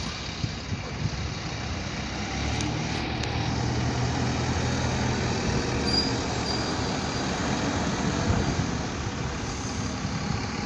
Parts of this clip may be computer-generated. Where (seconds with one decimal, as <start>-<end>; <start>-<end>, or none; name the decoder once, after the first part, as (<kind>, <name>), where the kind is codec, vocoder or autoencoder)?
none